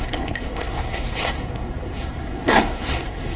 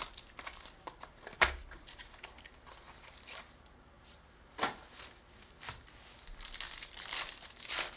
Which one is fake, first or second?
first